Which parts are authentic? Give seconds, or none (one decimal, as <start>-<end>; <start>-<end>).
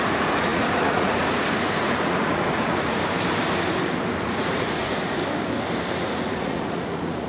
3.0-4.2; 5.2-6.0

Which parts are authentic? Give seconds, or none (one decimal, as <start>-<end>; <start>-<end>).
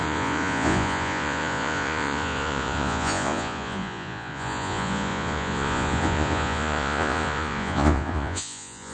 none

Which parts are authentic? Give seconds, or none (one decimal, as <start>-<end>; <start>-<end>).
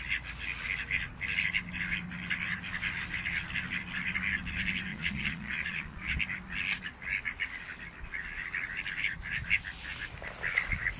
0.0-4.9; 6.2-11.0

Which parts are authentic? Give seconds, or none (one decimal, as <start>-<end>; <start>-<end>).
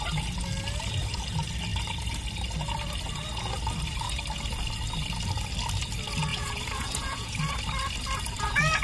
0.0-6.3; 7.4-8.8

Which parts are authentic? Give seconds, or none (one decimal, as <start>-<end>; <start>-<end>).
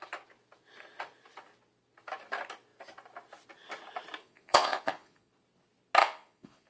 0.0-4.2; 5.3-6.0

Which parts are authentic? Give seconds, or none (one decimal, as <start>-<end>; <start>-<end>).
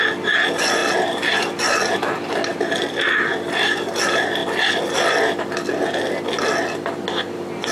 0.0-7.7